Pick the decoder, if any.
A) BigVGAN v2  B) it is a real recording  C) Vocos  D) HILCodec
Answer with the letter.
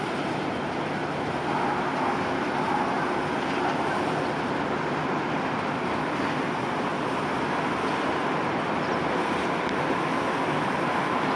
B